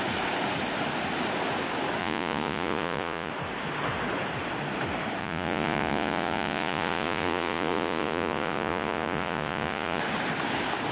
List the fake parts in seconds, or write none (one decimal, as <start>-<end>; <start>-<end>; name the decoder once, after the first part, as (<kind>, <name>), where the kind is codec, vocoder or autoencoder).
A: 2.0-3.3 (vocoder, Vocos); 5.2-10.0